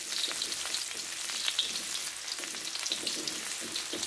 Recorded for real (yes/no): yes